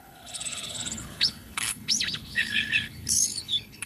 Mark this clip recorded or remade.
remade